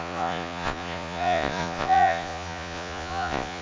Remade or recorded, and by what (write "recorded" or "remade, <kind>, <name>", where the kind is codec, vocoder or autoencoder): remade, vocoder, Vocos